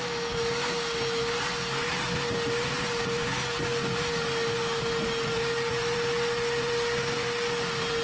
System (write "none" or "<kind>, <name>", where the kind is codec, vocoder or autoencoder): none